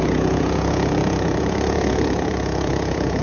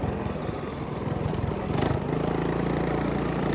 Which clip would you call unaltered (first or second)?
second